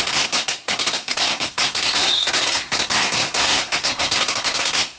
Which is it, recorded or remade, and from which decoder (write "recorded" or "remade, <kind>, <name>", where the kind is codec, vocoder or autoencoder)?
remade, codec, SNAC